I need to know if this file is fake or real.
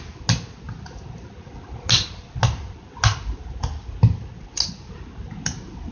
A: real